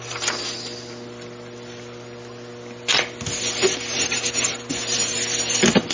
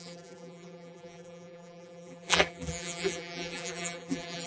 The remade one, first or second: second